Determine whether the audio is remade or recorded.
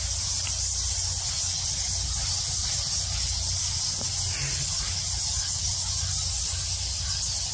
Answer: recorded